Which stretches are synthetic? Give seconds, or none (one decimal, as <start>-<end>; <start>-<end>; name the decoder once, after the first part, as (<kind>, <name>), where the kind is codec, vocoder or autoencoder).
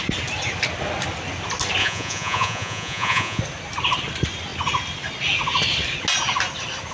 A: 1.8-3.4 (vocoder, Vocos)